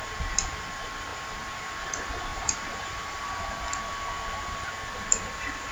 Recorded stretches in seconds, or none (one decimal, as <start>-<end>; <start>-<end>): 0.0-2.3; 3.2-5.7